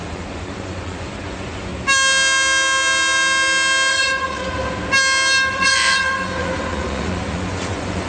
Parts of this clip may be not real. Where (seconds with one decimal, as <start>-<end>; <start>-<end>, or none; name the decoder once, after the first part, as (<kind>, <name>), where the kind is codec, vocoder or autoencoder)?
0.0-1.7 (vocoder, Vocos); 3.9-4.4; 5.5-8.1